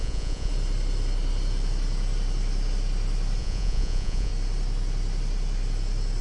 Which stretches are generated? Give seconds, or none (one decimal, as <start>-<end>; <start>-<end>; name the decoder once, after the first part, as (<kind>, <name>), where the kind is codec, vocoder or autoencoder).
0.0-0.5 (vocoder, Vocos); 3.4-4.3